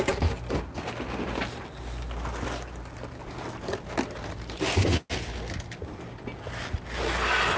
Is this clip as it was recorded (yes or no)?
yes